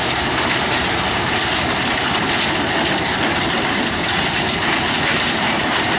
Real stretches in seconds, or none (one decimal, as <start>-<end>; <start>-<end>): 1.4-3.6